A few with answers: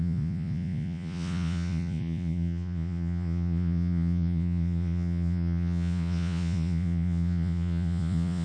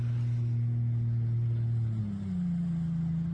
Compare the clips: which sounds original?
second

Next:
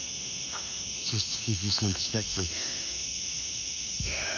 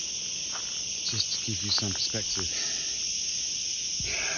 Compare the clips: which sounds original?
second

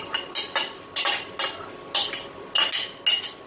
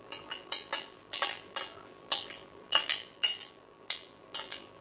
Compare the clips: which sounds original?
first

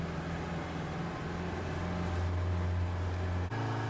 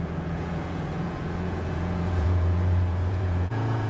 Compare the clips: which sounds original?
first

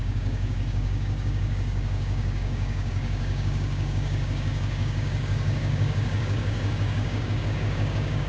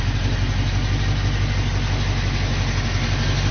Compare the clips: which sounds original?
second